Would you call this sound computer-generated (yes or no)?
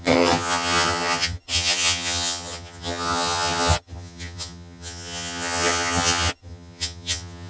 yes